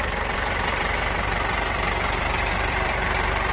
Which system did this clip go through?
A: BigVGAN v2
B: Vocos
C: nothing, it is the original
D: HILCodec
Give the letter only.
A